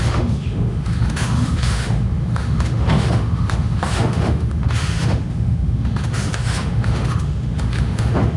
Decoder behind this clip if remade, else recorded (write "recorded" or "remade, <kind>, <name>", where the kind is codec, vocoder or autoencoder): remade, autoencoder, DAC-VAE